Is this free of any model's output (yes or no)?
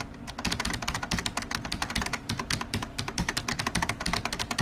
yes